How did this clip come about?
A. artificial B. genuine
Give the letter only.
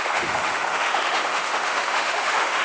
A